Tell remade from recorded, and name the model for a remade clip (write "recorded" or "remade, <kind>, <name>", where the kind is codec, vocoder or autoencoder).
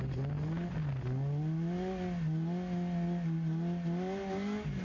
recorded